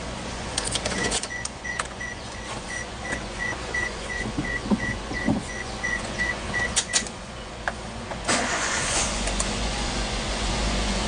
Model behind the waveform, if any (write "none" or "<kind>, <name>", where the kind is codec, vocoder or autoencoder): vocoder, Vocos